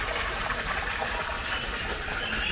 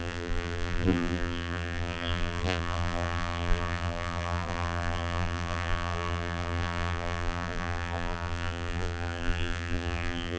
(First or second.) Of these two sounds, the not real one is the second